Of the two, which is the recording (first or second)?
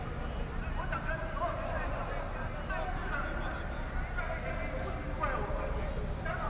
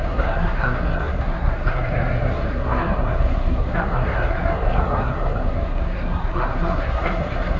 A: first